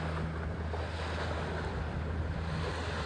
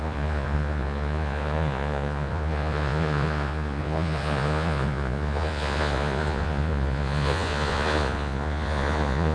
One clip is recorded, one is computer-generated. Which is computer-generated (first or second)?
second